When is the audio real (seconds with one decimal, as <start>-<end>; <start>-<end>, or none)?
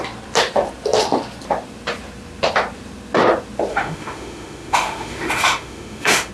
0.0-3.7